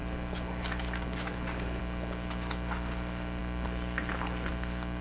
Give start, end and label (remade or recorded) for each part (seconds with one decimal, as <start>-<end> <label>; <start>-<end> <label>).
0.0-5.0 recorded